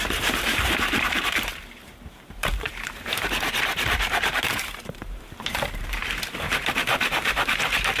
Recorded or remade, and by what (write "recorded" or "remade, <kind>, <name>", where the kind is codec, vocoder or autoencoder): remade, vocoder, BigVGAN v2